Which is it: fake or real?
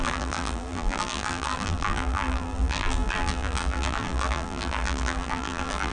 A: fake